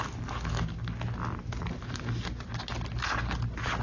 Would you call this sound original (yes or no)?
yes